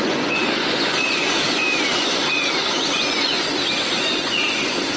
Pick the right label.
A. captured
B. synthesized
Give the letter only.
B